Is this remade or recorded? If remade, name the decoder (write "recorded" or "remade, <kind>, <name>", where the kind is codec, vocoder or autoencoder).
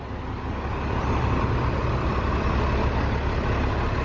recorded